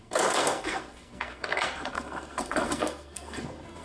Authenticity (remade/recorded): remade